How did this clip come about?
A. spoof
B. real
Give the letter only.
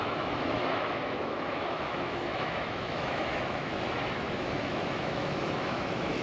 A